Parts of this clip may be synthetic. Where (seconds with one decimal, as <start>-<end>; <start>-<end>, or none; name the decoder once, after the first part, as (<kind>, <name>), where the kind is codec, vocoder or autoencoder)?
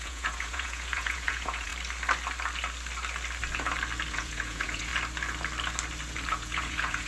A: 0.0-1.7 (vocoder, Vocos); 4.1-4.9; 6.3-7.1